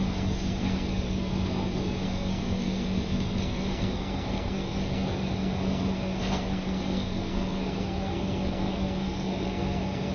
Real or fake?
fake